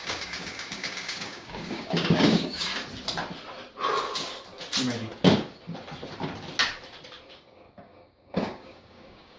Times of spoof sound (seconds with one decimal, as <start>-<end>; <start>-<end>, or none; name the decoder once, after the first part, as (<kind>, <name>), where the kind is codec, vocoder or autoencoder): 0.0-2.7 (codec, DAC); 7.3-9.4